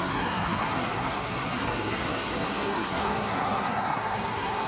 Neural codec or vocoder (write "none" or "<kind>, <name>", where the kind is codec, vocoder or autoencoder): codec, SNAC